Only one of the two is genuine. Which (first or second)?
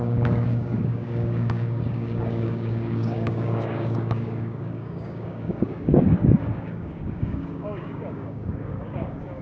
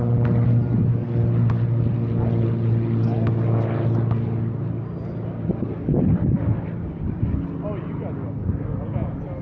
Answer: second